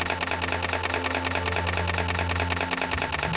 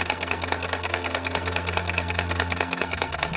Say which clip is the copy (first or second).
second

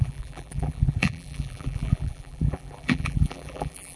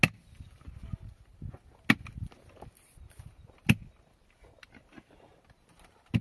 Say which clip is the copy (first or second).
first